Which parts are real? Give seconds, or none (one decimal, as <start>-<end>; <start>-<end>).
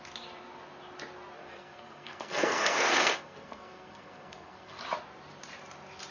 0.0-1.4; 4.8-6.1